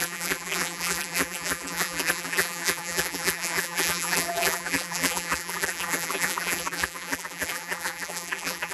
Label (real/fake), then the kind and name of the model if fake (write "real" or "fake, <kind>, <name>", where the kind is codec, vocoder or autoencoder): fake, vocoder, BigVGAN v2